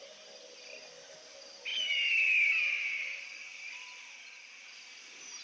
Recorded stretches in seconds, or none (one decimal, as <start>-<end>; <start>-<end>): 0.0-5.4